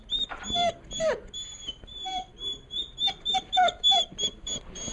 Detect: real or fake fake